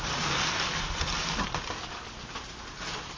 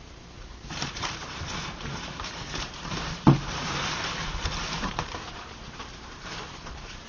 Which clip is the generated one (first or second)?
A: second